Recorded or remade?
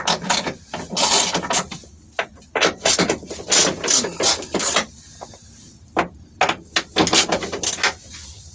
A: recorded